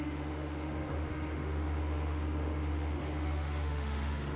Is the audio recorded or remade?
remade